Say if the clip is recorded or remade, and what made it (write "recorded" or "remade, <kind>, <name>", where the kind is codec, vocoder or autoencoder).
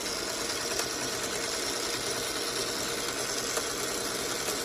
recorded